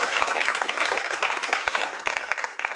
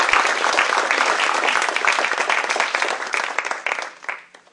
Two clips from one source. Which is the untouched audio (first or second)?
second